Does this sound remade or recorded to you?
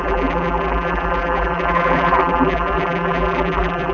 remade